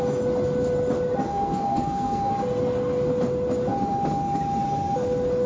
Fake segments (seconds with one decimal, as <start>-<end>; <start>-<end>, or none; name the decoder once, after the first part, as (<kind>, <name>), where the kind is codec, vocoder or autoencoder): 1.3-2.3 (codec, SNAC)